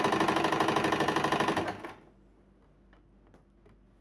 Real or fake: real